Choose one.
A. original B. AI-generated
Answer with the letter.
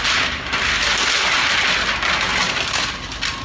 A